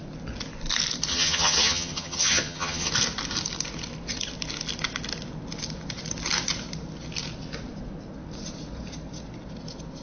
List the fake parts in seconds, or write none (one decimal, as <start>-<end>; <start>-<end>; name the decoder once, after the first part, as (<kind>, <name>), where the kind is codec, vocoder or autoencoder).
1.1-2.9 (vocoder, HiFi-GAN)